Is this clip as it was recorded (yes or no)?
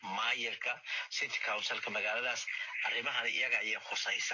yes